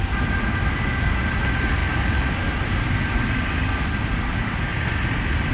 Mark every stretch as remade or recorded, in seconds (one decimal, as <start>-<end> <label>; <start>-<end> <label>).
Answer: 0.0-5.5 recorded